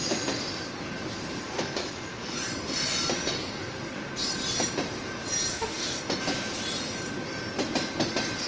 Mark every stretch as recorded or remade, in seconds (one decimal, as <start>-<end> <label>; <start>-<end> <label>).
0.0-3.4 recorded; 3.4-4.1 remade; 4.1-5.5 recorded; 5.5-6.0 remade; 6.0-8.5 recorded